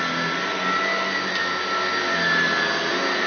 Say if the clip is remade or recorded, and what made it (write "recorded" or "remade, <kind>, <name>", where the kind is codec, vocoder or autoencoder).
recorded